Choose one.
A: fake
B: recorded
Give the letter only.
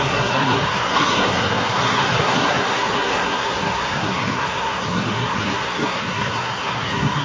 A